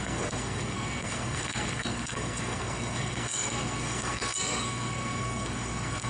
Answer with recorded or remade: remade